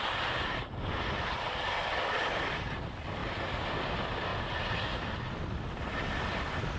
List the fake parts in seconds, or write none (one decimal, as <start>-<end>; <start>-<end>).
0.0-4.3; 5.3-6.8